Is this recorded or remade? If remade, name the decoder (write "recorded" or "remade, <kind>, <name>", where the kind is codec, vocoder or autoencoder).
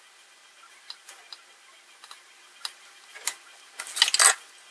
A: recorded